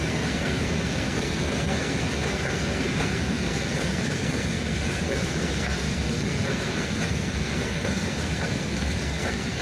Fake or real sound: fake